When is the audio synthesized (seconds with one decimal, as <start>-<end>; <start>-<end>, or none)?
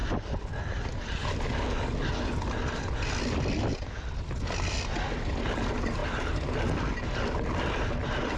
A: none